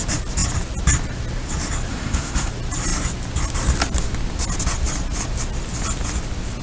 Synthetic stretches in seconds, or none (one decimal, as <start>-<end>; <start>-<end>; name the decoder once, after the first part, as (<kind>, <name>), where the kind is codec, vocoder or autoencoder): 1.9-2.5 (codec, SNAC)